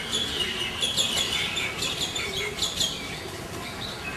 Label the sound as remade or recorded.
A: recorded